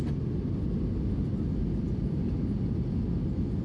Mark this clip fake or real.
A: real